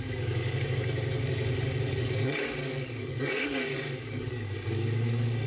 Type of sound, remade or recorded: remade